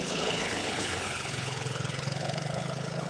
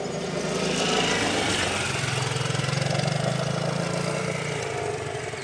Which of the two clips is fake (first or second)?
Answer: first